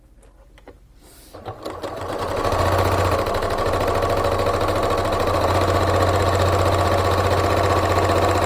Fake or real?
real